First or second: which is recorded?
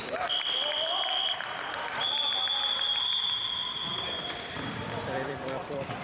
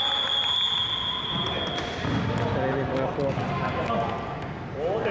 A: second